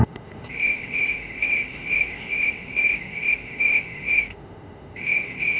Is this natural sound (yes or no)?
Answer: no